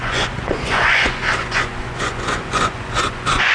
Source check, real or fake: fake